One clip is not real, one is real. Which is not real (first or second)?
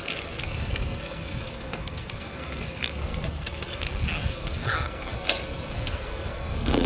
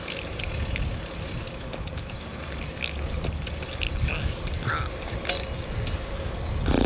first